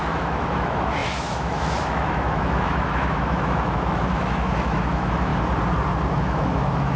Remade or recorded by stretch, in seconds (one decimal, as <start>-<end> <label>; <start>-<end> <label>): 0.0-5.3 remade; 5.3-6.1 recorded; 6.1-7.0 remade